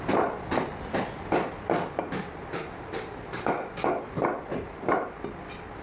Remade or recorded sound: recorded